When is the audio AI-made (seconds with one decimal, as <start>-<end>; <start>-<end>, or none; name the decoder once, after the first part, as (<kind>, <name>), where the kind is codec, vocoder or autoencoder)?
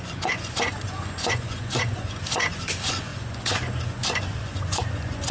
0.0-5.3 (vocoder, Vocos)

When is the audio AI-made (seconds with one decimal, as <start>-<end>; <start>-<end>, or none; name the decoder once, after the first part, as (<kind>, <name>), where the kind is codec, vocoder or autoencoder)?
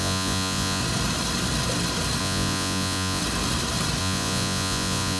0.0-0.8 (vocoder, Vocos); 2.2-3.2; 4.0-5.2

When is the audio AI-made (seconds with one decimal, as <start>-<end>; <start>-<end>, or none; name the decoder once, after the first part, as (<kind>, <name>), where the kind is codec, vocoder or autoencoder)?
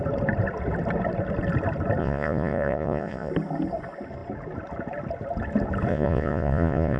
2.0-3.3 (vocoder, Vocos); 5.9-7.0